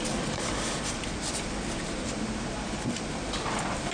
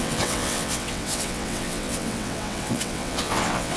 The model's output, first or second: second